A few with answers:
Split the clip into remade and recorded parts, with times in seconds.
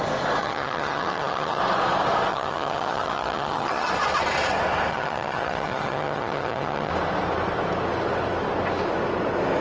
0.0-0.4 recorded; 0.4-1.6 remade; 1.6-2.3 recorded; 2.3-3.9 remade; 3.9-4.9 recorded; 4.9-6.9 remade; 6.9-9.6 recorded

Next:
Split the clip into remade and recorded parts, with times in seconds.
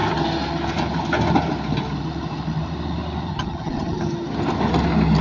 0.0-3.3 recorded; 3.3-4.0 remade; 4.0-5.2 recorded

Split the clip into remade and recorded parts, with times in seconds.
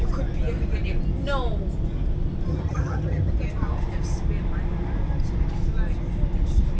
0.0-2.5 recorded; 2.5-3.3 remade; 3.3-6.8 recorded